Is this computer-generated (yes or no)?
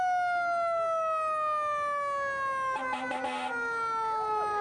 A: no